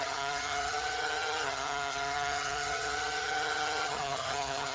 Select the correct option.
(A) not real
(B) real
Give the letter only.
A